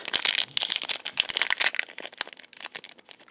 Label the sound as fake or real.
real